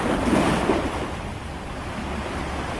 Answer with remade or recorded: recorded